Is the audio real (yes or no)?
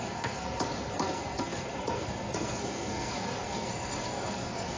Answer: no